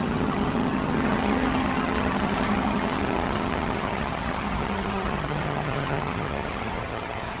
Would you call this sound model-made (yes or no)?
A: yes